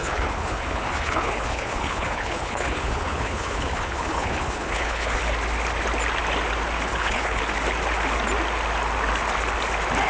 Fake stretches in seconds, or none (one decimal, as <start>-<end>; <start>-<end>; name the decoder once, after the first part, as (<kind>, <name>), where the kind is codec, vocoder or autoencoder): 0.0-5.2 (codec, HILCodec); 6.9-7.4